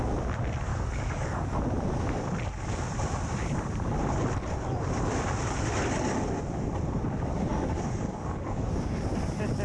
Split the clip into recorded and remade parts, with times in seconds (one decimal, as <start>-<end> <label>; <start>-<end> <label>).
0.0-0.7 recorded; 0.7-1.6 remade; 1.6-7.5 recorded; 7.5-8.8 remade; 8.8-9.6 recorded